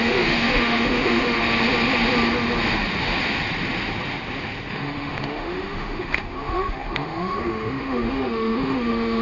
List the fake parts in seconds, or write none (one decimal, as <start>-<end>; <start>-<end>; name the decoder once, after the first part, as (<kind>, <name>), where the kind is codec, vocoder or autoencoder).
0.0-1.4 (autoencoder, DAC-VAE); 4.7-9.2